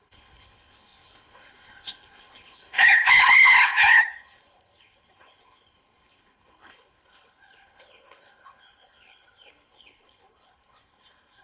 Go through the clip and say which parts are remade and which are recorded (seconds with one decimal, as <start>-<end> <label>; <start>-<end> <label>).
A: 0.0-11.4 remade